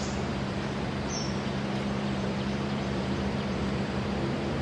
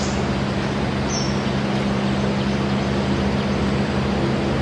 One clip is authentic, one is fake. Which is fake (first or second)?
first